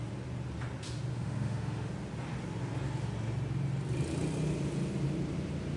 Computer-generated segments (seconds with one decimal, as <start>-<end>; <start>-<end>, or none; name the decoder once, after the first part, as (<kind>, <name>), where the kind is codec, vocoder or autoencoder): 1.1-1.9 (autoencoder, DAC-VAE)